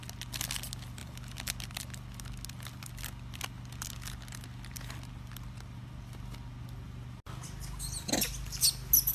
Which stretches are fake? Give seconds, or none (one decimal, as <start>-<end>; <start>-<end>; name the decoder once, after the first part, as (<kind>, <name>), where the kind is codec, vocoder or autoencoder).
none